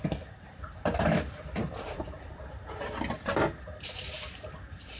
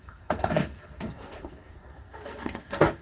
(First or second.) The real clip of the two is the first